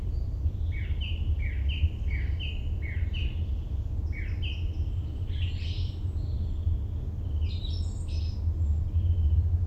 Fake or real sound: real